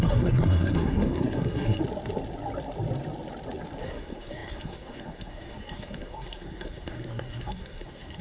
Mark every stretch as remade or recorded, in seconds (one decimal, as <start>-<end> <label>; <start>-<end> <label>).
0.0-1.8 remade; 1.8-3.8 recorded; 3.8-8.2 remade